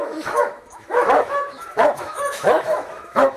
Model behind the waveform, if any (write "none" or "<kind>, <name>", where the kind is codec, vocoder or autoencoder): autoencoder, DAC-VAE